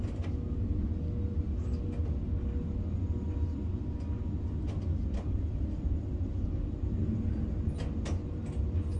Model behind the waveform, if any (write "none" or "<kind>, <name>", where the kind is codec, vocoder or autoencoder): none